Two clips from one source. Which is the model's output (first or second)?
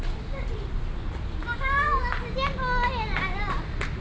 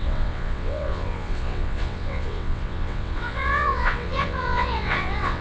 second